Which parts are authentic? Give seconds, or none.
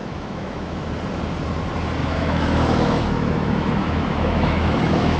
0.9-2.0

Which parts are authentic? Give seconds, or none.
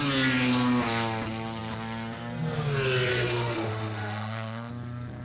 0.0-3.1; 4.7-5.2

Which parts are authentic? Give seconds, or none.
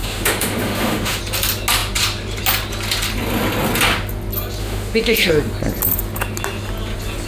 1.2-4.6; 5.3-7.3